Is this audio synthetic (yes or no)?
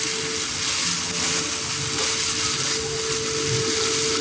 no